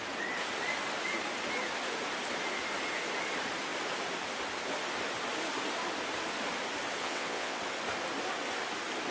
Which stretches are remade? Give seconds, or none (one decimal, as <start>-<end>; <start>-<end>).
7.0-7.6

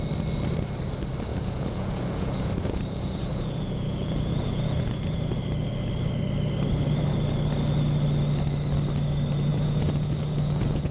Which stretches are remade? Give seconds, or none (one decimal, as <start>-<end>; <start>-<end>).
1.3-5.3; 9.5-10.9

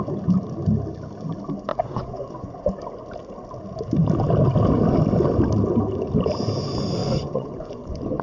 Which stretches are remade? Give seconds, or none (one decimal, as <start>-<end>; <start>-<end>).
1.7-2.7; 7.0-8.2

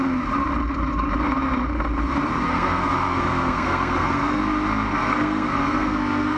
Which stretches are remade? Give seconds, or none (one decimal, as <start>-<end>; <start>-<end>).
2.4-4.4; 4.9-6.4

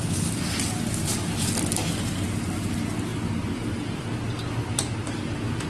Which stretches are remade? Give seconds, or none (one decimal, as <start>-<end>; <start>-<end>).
none

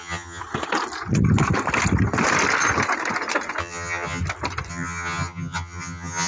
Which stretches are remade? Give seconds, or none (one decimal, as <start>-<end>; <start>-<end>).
0.0-0.4; 3.6-4.2; 4.7-6.3

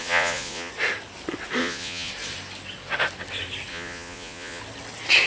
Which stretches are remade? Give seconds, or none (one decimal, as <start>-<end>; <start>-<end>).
0.0-0.7; 1.6-2.1; 3.7-4.6

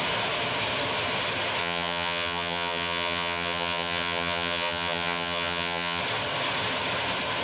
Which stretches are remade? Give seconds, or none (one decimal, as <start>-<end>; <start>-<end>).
1.6-6.0